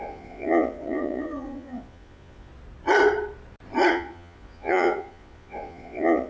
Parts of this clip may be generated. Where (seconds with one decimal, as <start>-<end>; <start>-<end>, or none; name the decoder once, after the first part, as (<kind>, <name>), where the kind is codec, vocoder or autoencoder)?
0.0-2.5 (vocoder, Vocos); 3.9-6.3